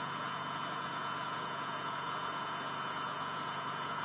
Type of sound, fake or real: fake